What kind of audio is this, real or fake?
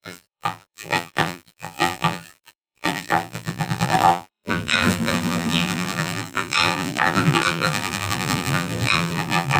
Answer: fake